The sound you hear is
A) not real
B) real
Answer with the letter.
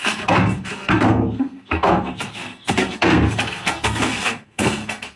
A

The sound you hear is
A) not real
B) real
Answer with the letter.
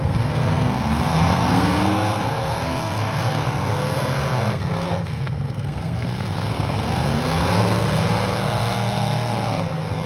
A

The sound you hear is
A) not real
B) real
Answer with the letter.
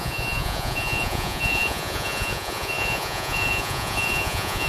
A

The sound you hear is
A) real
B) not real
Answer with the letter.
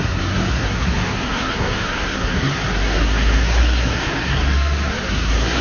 B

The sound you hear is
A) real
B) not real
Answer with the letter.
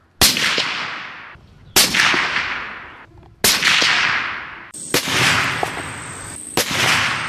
A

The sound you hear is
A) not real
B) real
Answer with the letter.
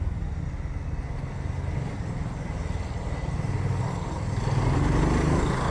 B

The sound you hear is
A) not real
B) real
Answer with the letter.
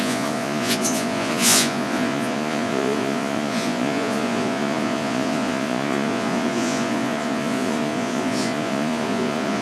A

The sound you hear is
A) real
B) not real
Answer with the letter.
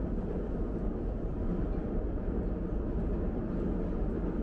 A